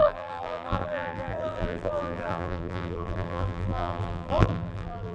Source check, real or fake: fake